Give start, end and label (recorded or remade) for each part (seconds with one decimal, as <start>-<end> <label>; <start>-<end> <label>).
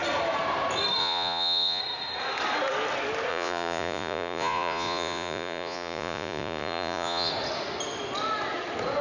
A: 0.0-1.0 recorded; 1.0-1.8 remade; 1.8-3.3 recorded; 3.3-7.3 remade; 7.3-9.0 recorded